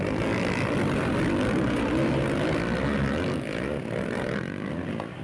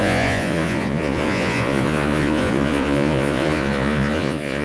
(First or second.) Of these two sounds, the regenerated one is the second